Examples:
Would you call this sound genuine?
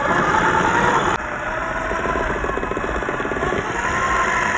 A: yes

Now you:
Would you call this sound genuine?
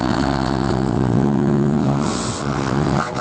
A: no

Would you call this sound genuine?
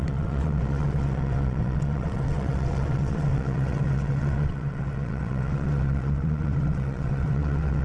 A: no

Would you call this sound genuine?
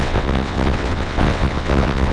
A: no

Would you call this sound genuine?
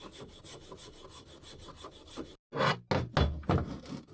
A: yes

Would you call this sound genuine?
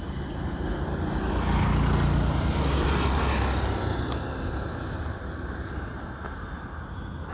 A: yes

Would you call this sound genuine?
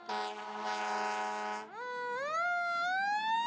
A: yes